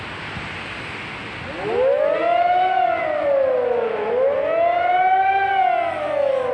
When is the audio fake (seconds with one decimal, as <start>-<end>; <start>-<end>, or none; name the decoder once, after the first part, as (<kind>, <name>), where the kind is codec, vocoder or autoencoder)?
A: none